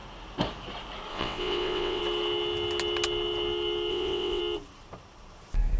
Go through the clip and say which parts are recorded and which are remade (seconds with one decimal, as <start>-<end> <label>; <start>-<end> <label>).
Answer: 0.0-1.1 recorded; 1.1-2.0 remade; 2.0-3.9 recorded; 3.9-4.4 remade; 4.4-5.8 recorded